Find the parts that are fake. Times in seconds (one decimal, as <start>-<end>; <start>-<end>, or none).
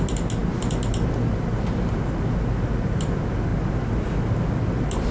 none